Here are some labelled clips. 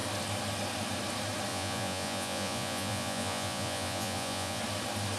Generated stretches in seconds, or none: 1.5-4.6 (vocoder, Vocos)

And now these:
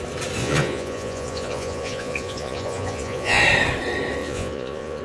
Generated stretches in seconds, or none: 0.4-3.4 (vocoder, Vocos); 4.2-5.0

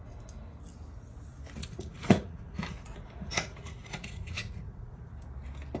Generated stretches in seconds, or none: 1.6-5.1 (vocoder, Vocos)

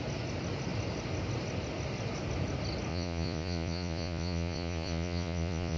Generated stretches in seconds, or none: 2.9-5.8 (vocoder, Vocos)